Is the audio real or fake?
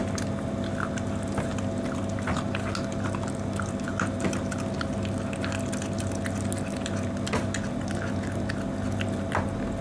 real